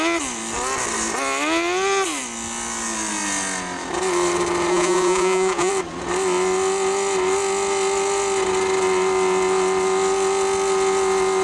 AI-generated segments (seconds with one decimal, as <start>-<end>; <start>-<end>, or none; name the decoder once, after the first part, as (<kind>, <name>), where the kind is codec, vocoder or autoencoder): 4.7-5.7 (vocoder, Vocos)